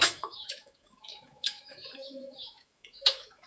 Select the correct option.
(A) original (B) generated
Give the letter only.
B